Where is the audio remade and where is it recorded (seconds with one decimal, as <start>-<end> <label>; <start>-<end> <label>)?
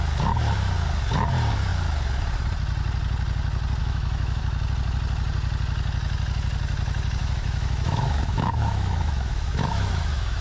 0.0-3.8 recorded; 3.8-4.4 remade; 4.4-7.2 recorded; 7.2-10.4 remade